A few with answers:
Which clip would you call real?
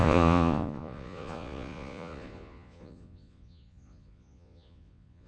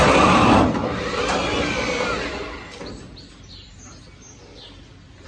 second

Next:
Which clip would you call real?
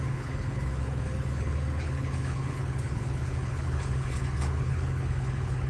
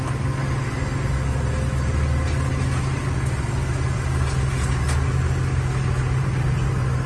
second